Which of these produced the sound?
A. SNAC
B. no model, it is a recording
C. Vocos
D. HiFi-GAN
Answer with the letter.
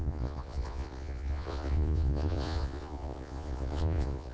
C